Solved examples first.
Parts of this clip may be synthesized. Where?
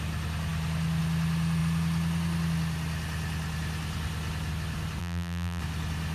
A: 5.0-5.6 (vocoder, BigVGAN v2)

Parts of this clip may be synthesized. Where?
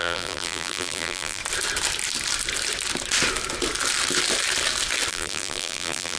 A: 0.0-1.4 (vocoder, BigVGAN v2); 5.1-6.2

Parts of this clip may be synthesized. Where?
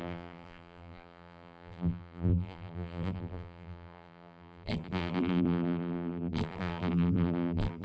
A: 0.0-7.8 (vocoder, BigVGAN v2)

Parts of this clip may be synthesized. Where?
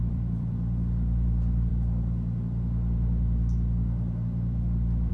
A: 0.0-1.7 (vocoder, BigVGAN v2)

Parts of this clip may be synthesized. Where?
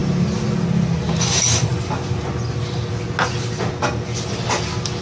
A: none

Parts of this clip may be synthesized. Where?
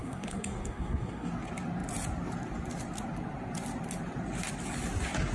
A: 0.0-1.3 (codec, SNAC)